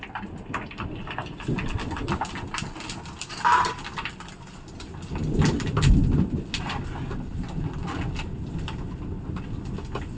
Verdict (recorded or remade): recorded